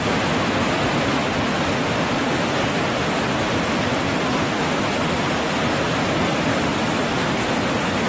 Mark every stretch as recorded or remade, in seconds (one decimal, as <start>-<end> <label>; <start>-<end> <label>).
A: 0.0-1.2 recorded; 1.2-5.5 remade; 5.5-6.7 recorded; 6.7-8.1 remade